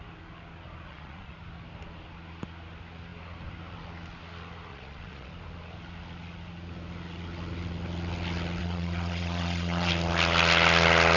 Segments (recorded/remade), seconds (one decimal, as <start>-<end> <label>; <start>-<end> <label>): 0.0-0.9 recorded; 0.9-1.4 remade; 1.4-4.7 recorded; 4.7-5.3 remade; 5.3-8.6 recorded; 8.6-9.9 remade; 9.9-11.2 recorded

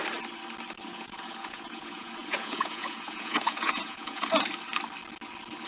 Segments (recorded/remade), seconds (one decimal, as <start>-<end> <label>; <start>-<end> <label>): 0.0-0.9 recorded; 0.9-4.3 remade; 4.3-5.7 recorded

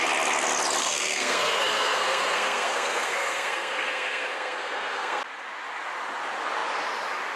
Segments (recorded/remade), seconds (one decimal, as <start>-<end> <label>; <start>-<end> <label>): 0.0-0.8 recorded; 0.8-5.2 remade; 5.2-7.4 recorded

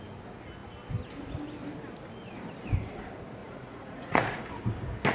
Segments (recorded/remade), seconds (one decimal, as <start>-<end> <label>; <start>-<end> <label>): 0.0-3.4 recorded; 3.4-4.4 remade; 4.4-5.1 recorded